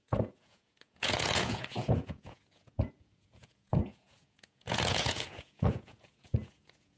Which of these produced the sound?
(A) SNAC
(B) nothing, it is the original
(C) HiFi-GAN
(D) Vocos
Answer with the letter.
D